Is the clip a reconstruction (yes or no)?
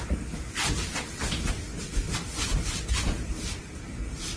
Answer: no